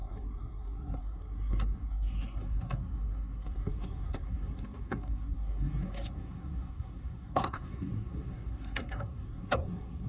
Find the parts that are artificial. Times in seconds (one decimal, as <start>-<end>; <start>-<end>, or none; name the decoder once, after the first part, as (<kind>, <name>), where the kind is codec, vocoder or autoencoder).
0.0-10.1 (codec, SNAC)